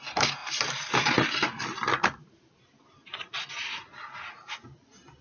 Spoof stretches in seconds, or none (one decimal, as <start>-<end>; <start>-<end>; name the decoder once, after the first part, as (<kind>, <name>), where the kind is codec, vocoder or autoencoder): 0.4-3.5 (vocoder, BigVGAN v2)